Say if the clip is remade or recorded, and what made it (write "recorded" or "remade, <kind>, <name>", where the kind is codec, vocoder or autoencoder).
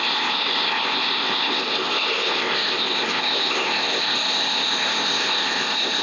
remade, codec, ZipCodec